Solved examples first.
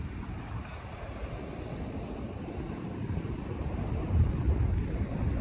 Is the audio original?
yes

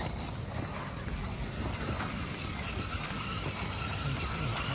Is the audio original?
yes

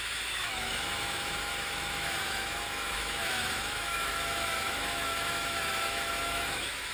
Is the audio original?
no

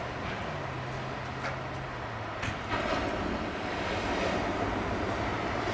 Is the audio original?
yes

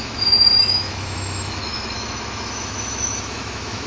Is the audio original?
no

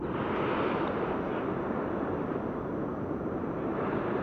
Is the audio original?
yes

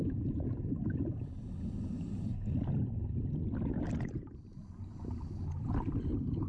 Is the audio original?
yes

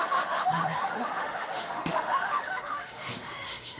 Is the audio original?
no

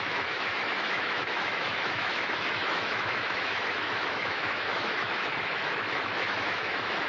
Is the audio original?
no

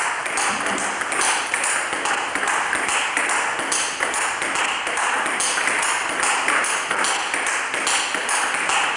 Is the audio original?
yes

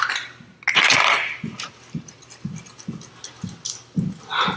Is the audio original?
yes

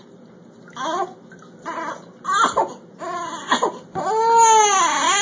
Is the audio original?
yes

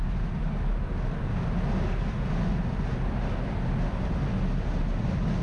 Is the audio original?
yes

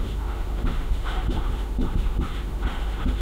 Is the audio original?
no